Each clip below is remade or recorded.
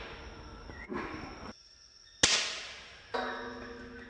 recorded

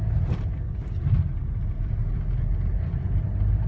recorded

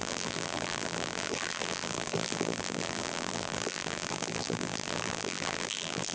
remade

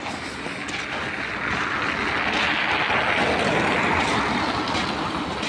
recorded